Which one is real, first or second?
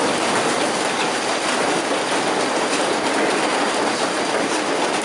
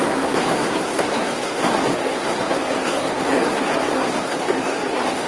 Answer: first